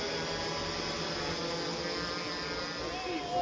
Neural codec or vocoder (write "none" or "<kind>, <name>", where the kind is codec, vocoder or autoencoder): none